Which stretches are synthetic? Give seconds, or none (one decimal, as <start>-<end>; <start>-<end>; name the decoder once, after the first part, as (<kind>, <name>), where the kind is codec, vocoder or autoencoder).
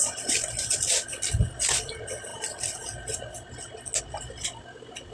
0.0-2.3 (vocoder, BigVGAN v2); 4.0-5.1